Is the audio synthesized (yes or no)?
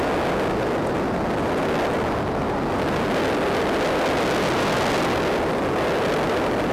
no